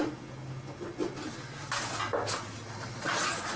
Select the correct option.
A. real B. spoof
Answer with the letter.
A